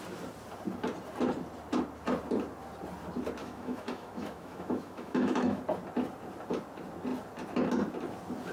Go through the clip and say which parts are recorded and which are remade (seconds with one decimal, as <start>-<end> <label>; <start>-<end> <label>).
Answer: 0.0-3.4 recorded; 3.4-5.6 remade; 5.6-8.5 recorded